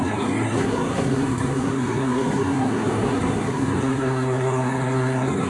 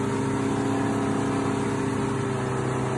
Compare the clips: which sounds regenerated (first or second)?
first